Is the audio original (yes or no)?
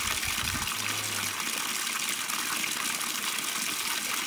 yes